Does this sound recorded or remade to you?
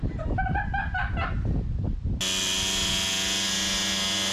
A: recorded